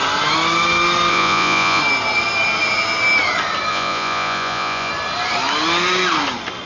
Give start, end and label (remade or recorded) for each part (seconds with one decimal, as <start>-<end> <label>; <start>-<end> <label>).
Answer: 0.0-1.1 recorded; 1.1-1.8 remade; 1.8-3.7 recorded; 3.7-4.9 remade; 4.9-6.7 recorded